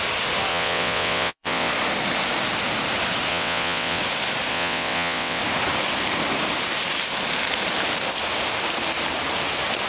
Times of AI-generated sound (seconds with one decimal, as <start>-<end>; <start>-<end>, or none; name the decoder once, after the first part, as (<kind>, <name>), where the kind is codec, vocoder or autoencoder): 0.5-1.7 (vocoder, WaveNeXt); 3.3-4.0; 4.5-5.4